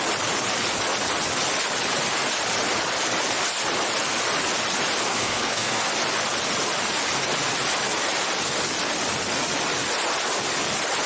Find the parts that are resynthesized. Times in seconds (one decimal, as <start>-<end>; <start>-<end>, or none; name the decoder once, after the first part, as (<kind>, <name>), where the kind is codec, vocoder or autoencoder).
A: 5.1-5.8 (codec, SNAC)